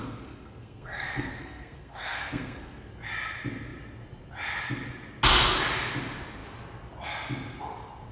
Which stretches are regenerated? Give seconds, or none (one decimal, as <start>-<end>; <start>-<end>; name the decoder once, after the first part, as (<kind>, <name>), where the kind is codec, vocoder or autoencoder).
0.0-2.9 (codec, SNAC)